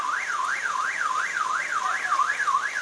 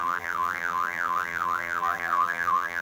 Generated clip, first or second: second